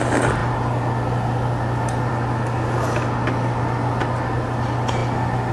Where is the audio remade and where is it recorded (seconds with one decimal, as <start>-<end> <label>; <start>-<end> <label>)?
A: 0.0-5.5 recorded